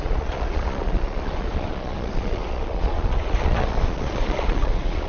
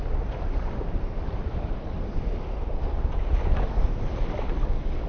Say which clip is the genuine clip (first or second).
second